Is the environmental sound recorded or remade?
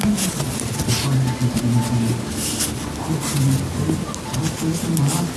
recorded